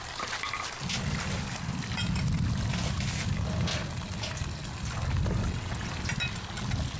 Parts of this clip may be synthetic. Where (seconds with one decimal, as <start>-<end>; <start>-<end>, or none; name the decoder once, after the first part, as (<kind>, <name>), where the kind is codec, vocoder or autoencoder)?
5.4-5.9 (vocoder, WaveNeXt)